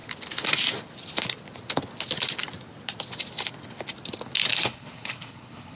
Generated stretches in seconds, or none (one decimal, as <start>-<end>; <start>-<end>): 4.5-5.8